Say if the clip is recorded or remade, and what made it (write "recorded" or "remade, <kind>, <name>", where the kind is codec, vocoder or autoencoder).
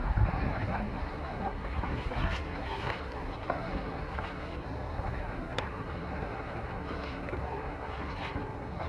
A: remade, codec, SNAC